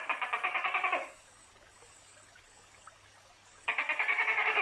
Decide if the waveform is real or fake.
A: fake